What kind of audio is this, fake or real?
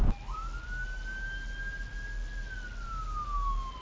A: real